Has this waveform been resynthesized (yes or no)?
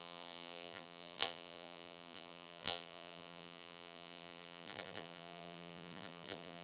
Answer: yes